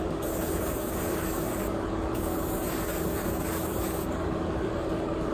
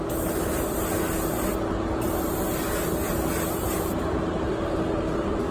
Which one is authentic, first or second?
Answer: second